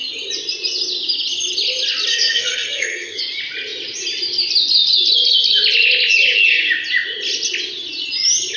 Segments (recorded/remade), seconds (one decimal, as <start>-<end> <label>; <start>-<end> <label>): 0.0-2.1 recorded; 2.1-3.2 remade; 3.2-8.6 recorded

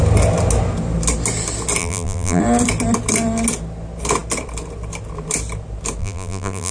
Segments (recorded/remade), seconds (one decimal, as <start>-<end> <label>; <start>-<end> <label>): 0.0-1.8 recorded; 1.8-2.4 remade; 2.4-6.0 recorded; 6.0-6.7 remade

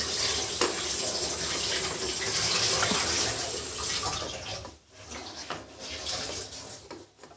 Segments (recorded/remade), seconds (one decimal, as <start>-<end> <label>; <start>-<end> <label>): 0.0-7.4 recorded

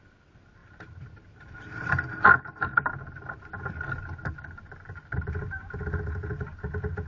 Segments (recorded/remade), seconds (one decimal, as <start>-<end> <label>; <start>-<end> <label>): 0.0-7.1 recorded